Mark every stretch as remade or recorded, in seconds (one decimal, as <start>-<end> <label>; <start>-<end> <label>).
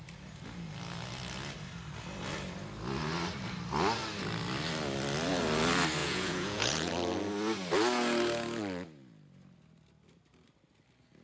0.0-6.0 recorded; 6.0-6.9 remade; 6.9-11.2 recorded